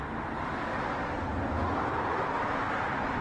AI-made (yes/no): no